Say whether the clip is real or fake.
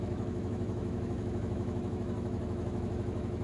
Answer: fake